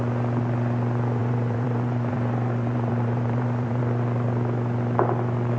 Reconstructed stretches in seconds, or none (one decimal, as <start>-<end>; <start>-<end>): 1.2-3.8